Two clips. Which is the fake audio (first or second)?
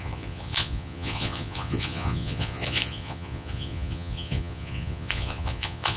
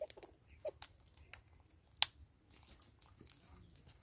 first